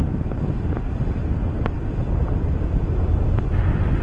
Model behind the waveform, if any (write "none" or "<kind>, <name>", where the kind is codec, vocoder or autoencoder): none